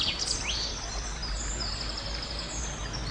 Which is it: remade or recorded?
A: recorded